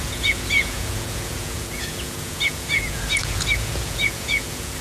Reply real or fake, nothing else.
fake